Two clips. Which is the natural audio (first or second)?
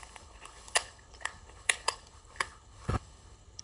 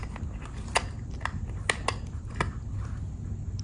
second